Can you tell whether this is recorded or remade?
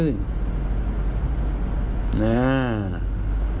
recorded